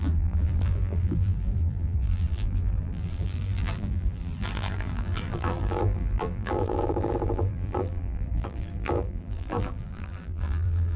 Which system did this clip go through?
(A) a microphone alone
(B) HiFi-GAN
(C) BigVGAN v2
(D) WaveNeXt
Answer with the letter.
C